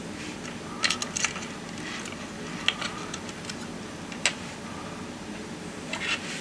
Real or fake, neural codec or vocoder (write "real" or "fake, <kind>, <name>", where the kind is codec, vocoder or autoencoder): real